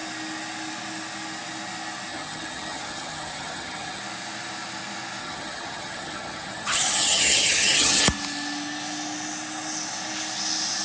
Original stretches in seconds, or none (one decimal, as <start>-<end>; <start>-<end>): 0.0-2.1; 4.0-5.2; 8.0-10.8